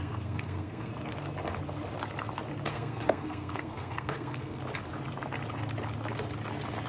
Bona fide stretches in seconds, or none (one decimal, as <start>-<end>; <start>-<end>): 0.9-2.7; 4.6-6.9

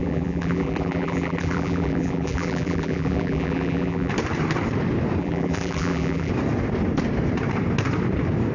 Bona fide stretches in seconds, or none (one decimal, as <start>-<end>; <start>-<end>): 4.1-5.2; 6.3-8.5

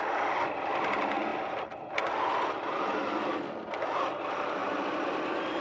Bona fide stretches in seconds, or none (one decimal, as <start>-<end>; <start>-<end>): 0.0-4.6; 5.1-5.6

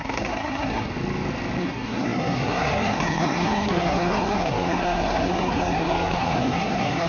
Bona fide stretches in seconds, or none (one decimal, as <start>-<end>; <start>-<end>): 0.9-1.6

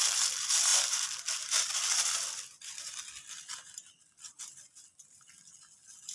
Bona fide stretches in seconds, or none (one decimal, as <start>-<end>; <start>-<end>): 0.0-6.1

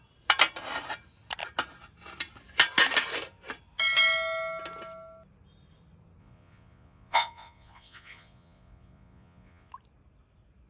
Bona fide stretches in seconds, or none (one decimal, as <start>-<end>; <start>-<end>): 0.0-6.2; 9.7-10.7

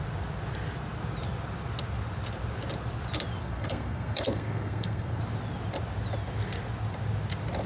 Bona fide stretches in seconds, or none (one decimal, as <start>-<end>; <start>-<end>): 0.0-3.4; 5.2-7.7